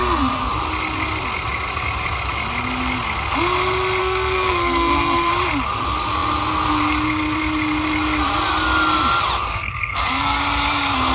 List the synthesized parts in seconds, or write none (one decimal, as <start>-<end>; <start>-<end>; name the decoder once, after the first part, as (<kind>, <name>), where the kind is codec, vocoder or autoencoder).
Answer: 4.0-5.3 (codec, SNAC); 9.5-10.4